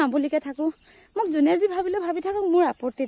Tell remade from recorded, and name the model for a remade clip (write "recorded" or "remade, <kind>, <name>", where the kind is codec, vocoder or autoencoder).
recorded